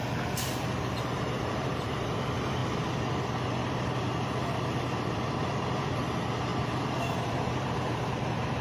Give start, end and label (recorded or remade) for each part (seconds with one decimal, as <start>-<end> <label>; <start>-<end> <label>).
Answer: 0.0-2.6 remade; 2.6-3.7 recorded; 3.7-8.6 remade